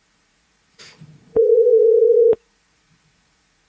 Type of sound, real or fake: fake